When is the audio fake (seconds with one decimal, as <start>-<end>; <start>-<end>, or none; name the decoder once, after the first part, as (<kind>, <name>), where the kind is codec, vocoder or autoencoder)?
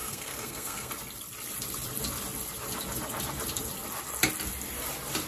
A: 0.0-0.9 (codec, SNAC)